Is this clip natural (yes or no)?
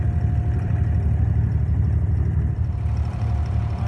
no